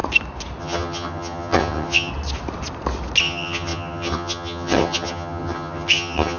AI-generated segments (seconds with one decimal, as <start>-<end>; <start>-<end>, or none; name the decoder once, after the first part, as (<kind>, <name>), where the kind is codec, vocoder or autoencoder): 0.6-2.1 (vocoder, HiFi-GAN); 3.2-6.4